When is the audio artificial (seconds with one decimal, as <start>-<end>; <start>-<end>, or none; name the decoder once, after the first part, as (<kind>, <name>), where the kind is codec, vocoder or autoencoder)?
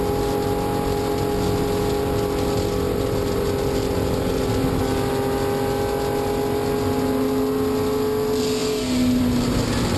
none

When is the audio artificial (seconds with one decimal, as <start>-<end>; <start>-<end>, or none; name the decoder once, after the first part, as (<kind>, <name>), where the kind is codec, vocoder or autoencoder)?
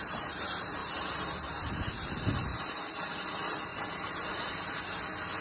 0.8-1.9 (vocoder, BigVGAN v2); 2.5-3.1; 3.7-4.7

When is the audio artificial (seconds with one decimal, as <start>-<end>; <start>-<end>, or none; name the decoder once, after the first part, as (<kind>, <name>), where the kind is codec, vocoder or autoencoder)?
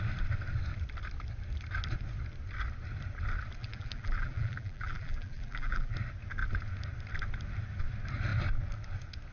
3.6-5.9 (vocoder, BigVGAN v2)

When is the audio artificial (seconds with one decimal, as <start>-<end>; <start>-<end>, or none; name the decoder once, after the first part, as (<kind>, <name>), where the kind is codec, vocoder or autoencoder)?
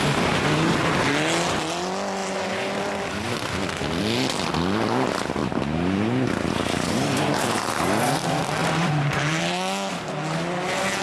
5.4-7.6 (vocoder, BigVGAN v2); 8.6-9.4